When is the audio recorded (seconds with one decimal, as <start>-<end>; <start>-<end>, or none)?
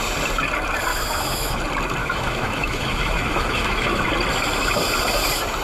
0.0-0.9; 1.6-2.0; 4.1-5.6